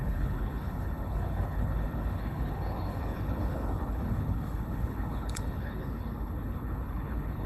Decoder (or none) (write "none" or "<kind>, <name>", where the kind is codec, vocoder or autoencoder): codec, HILCodec